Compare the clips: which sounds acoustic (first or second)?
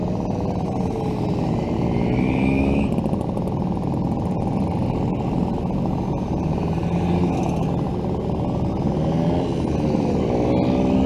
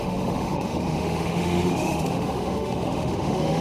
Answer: first